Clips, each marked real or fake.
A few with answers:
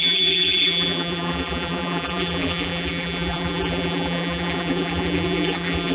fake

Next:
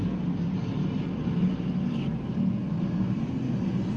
real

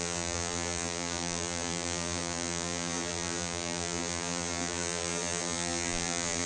fake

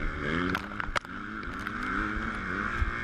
real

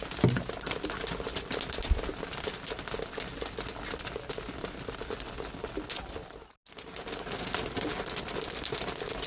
real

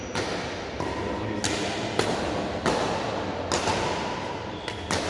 real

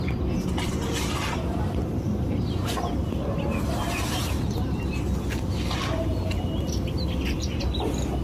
real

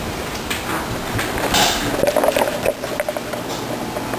real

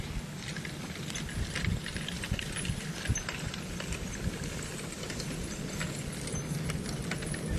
real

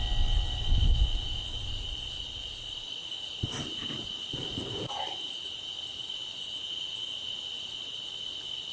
real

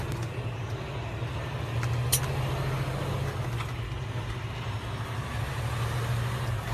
real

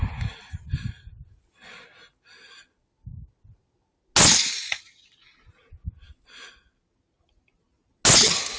real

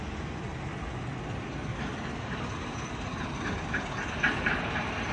real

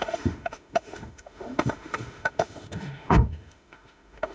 fake